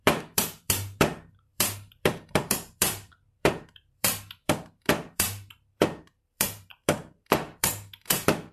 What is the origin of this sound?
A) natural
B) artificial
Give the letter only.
B